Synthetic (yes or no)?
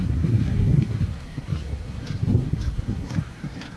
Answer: yes